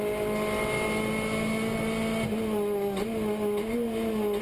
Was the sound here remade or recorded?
recorded